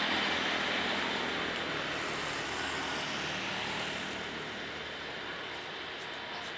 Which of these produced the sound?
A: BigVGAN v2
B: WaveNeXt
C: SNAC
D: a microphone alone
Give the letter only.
D